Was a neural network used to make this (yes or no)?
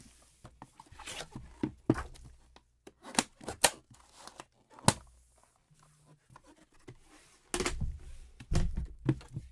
no